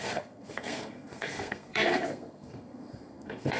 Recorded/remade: remade